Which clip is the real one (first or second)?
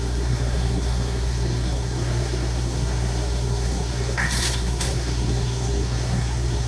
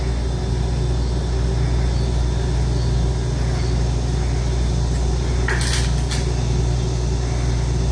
second